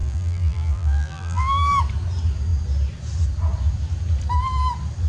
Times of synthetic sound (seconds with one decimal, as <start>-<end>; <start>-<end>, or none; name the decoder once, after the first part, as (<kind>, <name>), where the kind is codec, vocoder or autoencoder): 0.0-1.8 (vocoder, BigVGAN v2)